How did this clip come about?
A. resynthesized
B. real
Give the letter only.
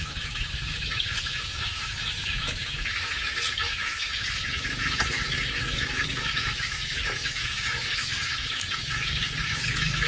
A